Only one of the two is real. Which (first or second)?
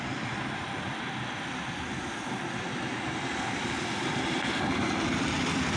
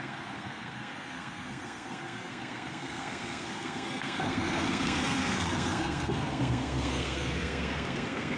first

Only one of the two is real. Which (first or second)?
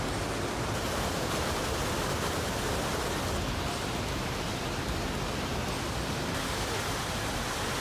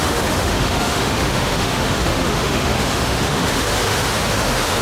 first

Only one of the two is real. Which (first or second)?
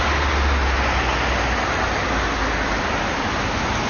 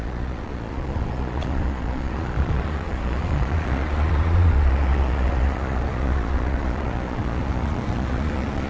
first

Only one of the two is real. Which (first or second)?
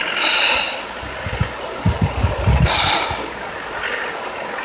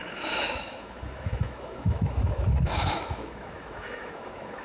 first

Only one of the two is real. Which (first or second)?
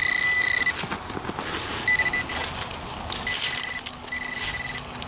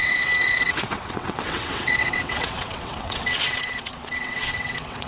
first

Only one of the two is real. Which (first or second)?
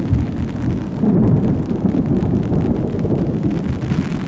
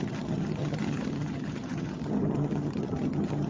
first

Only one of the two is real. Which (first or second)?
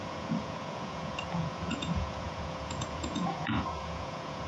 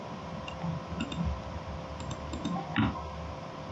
second